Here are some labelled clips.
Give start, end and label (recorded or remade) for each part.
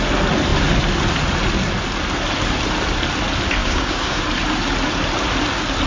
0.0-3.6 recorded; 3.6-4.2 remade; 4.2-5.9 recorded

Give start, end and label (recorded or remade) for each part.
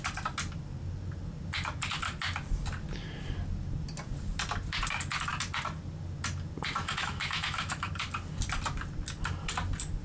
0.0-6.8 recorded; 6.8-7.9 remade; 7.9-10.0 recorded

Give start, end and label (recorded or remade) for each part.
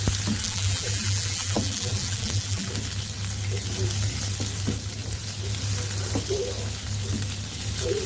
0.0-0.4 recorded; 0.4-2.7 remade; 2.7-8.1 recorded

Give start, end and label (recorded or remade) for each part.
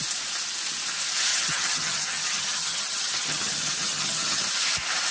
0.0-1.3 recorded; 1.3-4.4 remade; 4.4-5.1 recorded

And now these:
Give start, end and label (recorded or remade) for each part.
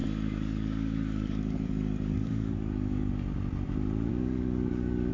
0.0-3.1 remade; 3.1-4.1 recorded; 4.1-5.1 remade